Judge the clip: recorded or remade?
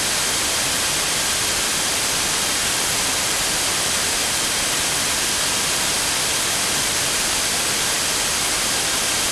remade